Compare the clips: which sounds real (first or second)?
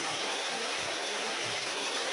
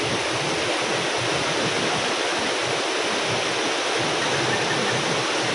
second